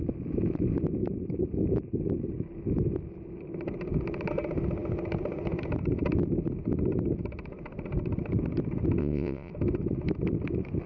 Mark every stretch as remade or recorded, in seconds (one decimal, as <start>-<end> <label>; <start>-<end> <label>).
0.0-9.0 recorded; 9.0-9.5 remade; 9.5-10.9 recorded